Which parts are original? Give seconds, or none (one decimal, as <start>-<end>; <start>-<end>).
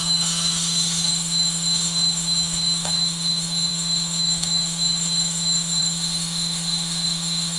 none